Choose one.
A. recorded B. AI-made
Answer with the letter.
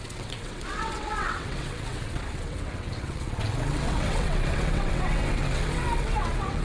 B